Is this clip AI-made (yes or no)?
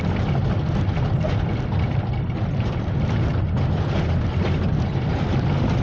no